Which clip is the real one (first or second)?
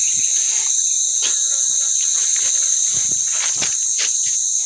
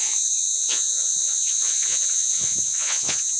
first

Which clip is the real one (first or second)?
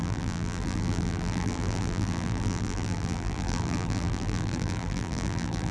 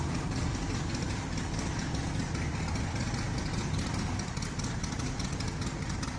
second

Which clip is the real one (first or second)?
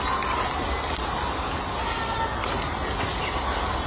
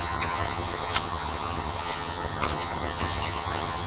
first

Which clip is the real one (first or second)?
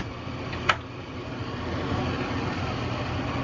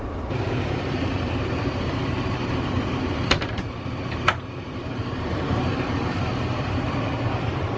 first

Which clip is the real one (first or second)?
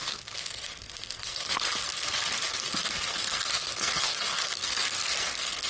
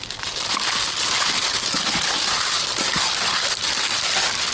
second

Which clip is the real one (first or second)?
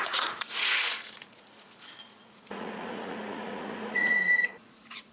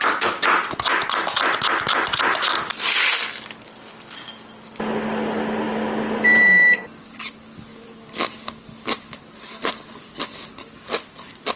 second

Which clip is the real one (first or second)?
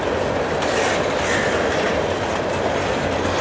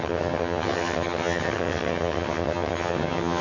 first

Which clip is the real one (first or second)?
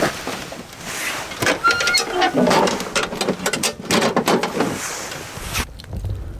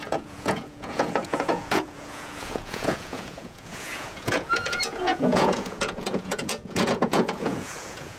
first